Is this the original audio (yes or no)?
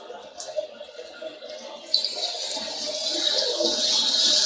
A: yes